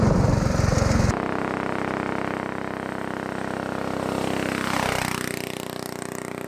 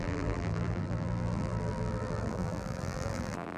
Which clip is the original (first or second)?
first